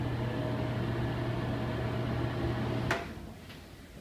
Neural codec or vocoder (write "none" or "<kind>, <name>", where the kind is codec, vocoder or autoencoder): none